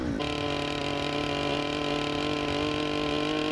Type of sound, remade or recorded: recorded